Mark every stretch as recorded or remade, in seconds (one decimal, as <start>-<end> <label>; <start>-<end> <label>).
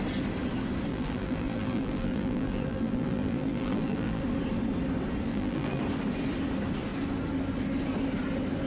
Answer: 0.0-0.9 recorded; 0.9-4.2 remade; 4.2-5.3 recorded; 5.3-5.8 remade; 5.8-8.7 recorded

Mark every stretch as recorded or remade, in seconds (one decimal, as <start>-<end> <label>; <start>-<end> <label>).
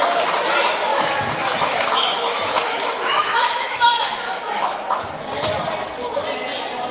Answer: 0.0-0.9 recorded; 0.9-5.0 remade; 5.0-6.9 recorded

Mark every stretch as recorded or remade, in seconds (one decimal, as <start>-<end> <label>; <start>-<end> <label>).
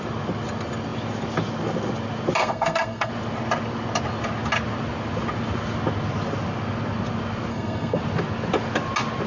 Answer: 0.0-2.4 recorded; 2.4-3.1 remade; 3.1-7.5 recorded; 7.5-8.0 remade; 8.0-9.3 recorded